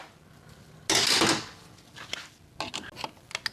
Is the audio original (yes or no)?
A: yes